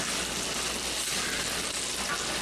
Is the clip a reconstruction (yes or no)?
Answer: no